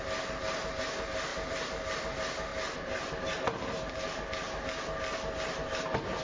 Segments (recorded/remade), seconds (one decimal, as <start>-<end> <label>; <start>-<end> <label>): 0.0-1.3 recorded; 1.3-2.0 remade; 2.0-6.2 recorded